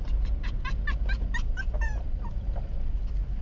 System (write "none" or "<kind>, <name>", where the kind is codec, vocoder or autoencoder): none